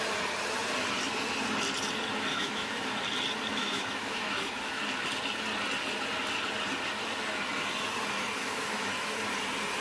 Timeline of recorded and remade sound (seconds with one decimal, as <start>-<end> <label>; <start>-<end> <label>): 0.0-2.3 recorded; 2.3-2.9 remade; 2.9-3.5 recorded; 3.5-4.8 remade; 4.8-8.4 recorded; 8.4-9.2 remade; 9.2-9.8 recorded